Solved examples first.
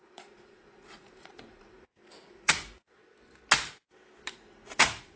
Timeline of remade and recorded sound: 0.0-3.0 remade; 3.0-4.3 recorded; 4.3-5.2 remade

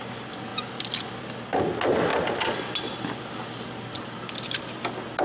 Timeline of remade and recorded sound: 0.0-5.2 recorded

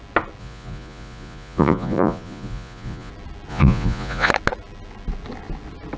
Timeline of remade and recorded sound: 0.0-0.4 recorded; 0.4-3.1 remade; 3.1-3.5 recorded; 3.5-4.3 remade; 4.3-6.0 recorded

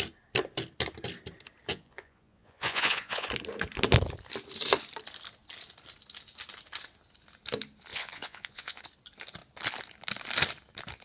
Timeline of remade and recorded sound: 0.0-1.7 recorded; 1.7-3.3 remade; 3.3-7.9 recorded; 7.9-8.8 remade; 8.8-11.0 recorded

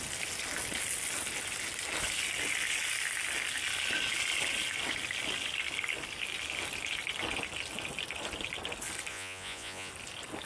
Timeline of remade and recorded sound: 0.0-9.1 recorded; 9.1-9.9 remade; 9.9-10.5 recorded